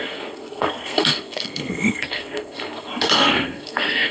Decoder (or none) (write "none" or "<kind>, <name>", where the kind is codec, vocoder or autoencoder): codec, SNAC